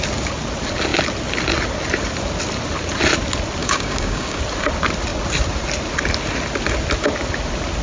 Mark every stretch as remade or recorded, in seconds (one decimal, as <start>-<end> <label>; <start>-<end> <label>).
0.0-3.6 recorded; 3.6-4.4 remade; 4.4-7.8 recorded